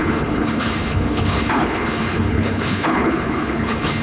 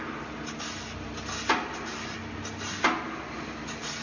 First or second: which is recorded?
second